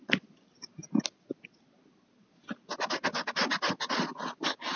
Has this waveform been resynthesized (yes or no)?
no